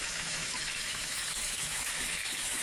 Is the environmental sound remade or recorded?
remade